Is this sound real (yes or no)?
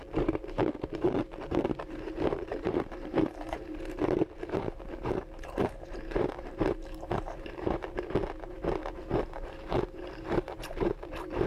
no